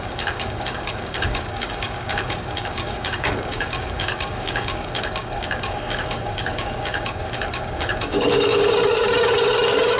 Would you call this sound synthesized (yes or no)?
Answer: yes